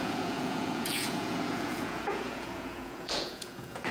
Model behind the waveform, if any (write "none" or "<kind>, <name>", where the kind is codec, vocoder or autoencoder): vocoder, Vocos